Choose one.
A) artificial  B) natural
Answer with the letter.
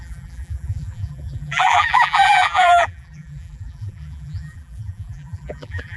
A